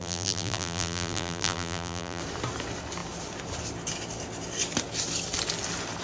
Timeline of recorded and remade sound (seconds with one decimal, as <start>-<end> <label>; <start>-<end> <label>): 0.0-2.2 remade; 2.2-6.0 recorded